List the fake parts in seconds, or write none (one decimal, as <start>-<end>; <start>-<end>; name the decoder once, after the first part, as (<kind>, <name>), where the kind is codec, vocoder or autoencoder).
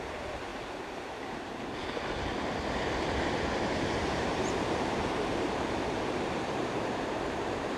0.0-1.8 (vocoder, BigVGAN v2); 4.0-7.8